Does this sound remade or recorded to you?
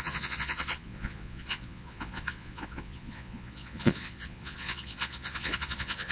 remade